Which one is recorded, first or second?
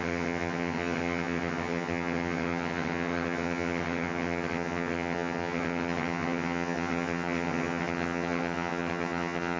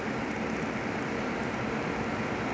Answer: second